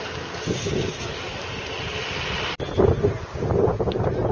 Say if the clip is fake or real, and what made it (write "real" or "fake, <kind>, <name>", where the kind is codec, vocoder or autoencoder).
real